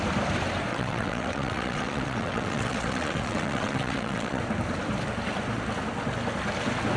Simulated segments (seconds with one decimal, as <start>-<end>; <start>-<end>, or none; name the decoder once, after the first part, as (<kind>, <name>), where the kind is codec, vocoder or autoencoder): 0.7-4.4 (vocoder, WaveNeXt)